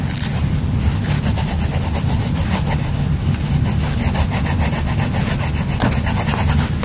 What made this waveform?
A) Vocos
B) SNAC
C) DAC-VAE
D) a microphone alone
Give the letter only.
D